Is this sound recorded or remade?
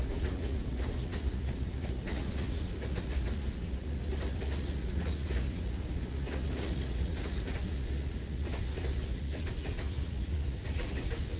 remade